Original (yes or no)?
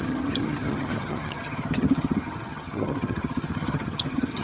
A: no